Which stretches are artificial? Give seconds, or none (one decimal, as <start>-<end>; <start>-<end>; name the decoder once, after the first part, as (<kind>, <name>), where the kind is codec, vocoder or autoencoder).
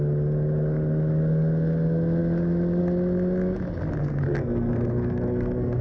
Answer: 4.0-5.8 (codec, SNAC)